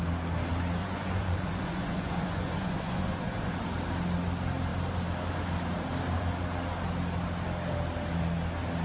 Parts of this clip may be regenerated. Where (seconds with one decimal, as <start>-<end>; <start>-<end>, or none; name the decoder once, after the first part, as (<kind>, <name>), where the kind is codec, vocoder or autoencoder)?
0.8-3.6 (vocoder, Vocos)